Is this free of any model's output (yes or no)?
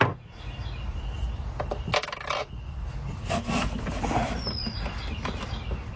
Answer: yes